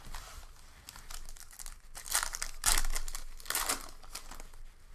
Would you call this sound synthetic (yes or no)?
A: no